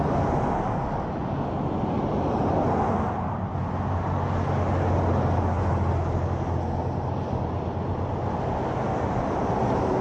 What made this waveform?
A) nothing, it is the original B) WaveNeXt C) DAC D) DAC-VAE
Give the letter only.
A